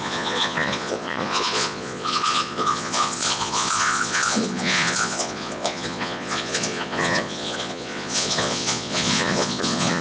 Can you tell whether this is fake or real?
fake